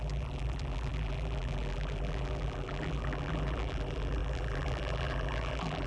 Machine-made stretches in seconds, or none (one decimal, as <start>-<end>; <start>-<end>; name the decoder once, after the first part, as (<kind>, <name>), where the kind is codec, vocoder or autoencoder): 0.0-5.9 (vocoder, BigVGAN v2)